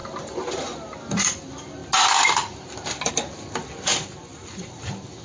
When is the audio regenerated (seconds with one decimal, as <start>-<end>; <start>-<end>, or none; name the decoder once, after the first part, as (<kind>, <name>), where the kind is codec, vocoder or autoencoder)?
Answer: 0.0-1.8 (vocoder, BigVGAN v2); 3.1-5.2